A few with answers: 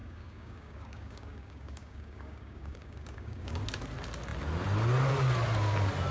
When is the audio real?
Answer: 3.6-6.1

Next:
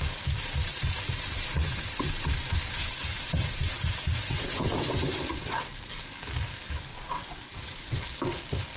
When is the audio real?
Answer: 0.0-0.7; 5.7-6.9; 8.0-8.8